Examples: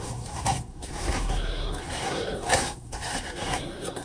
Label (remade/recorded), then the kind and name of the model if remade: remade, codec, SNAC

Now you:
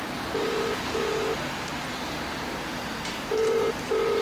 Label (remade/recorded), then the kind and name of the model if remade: remade, vocoder, BigVGAN v2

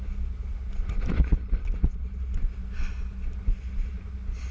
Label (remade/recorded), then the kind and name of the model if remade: recorded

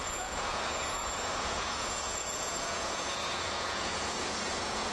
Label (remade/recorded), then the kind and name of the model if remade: remade, vocoder, Vocos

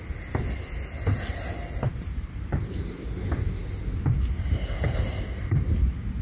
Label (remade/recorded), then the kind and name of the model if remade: recorded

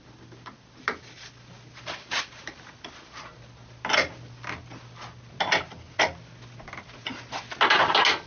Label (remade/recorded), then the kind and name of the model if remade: recorded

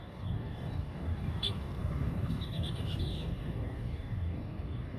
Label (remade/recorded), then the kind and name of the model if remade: remade, codec, DAC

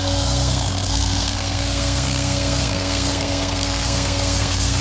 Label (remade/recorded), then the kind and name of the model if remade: remade, codec, SNAC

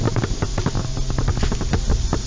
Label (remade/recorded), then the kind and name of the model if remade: recorded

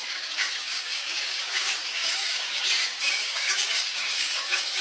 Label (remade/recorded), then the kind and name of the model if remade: remade, codec, DAC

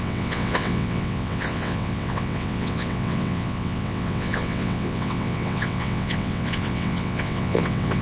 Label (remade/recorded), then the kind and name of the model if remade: remade, vocoder, WaveNeXt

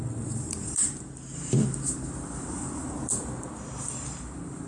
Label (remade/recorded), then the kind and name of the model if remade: remade, vocoder, BigVGAN v2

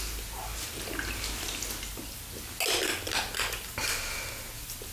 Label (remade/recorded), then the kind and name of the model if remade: recorded